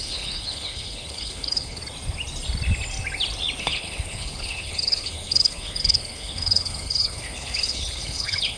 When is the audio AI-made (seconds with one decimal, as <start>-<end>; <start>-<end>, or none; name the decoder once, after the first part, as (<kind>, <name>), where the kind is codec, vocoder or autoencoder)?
0.0-1.8 (codec, HILCodec); 3.6-8.6